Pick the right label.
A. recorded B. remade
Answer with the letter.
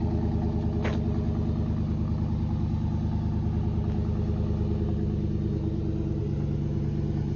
A